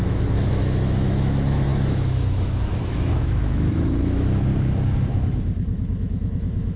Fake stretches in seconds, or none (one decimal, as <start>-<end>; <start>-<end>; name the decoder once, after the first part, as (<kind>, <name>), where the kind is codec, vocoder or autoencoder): 0.0-4.5 (autoencoder, DAC-VAE); 5.1-6.8

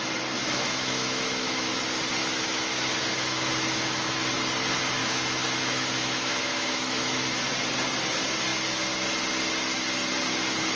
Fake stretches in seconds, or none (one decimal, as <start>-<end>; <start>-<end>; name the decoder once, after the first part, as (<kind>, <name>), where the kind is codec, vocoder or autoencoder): 0.4-1.8 (autoencoder, DAC-VAE); 2.2-4.2; 5.0-7.4

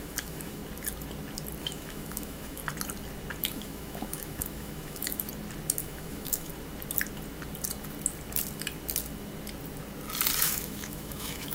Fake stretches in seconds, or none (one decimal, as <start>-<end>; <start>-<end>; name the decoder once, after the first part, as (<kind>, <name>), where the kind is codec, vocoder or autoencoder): 0.0-0.6 (autoencoder, DAC-VAE); 1.6-2.6; 3.4-5.3; 5.8-6.5; 10.4-11.5

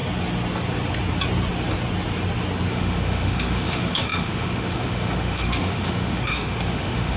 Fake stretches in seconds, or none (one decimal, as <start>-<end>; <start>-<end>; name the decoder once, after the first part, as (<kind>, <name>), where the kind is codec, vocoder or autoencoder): 2.7-7.2 (autoencoder, DAC-VAE)

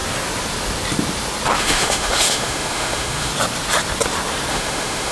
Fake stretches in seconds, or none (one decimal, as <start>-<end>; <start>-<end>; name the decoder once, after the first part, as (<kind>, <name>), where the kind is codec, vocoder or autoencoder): 1.6-3.3 (autoencoder, DAC-VAE); 4.5-5.1